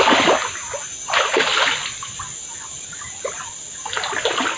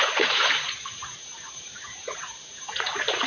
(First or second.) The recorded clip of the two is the first